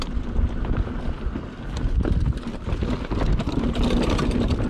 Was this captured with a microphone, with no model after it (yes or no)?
yes